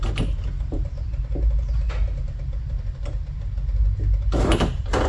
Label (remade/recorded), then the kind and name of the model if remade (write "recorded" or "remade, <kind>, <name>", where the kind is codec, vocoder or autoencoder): recorded